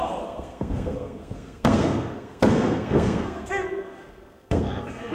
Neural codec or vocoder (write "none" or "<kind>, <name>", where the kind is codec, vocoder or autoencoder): codec, SNAC